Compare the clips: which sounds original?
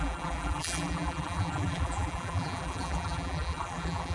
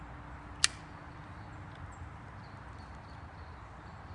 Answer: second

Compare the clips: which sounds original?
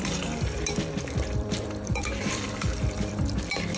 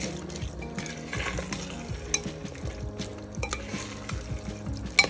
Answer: second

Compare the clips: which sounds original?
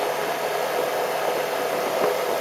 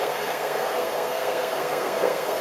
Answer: first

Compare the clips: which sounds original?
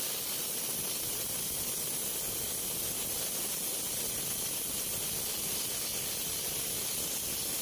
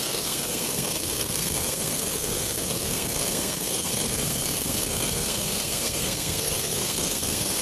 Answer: first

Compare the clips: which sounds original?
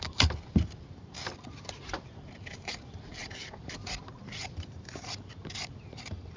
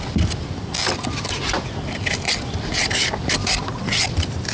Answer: second